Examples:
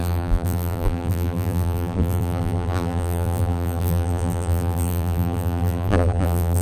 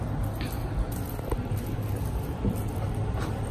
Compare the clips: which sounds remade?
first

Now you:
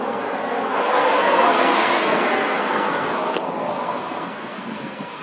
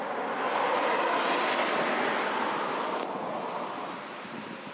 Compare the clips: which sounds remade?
first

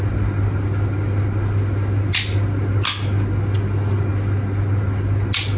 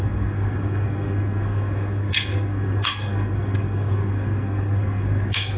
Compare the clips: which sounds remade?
second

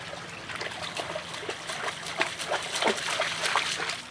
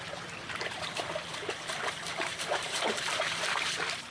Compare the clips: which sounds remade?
second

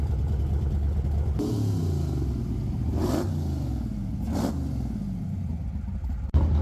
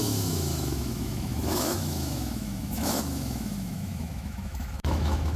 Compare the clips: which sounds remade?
second